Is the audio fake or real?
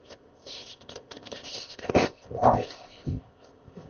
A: fake